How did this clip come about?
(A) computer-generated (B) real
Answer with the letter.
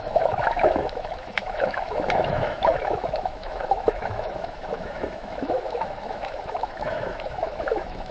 A